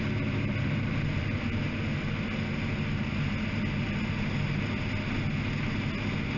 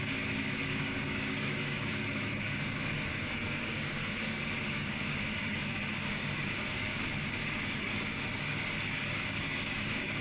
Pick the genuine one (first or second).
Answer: first